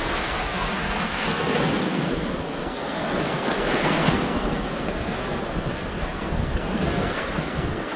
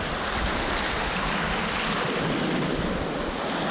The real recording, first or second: second